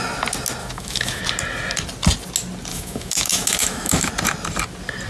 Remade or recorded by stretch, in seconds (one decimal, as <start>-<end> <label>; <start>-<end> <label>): 0.0-0.6 recorded; 0.6-1.2 remade; 1.2-2.7 recorded; 2.7-4.1 remade; 4.1-5.1 recorded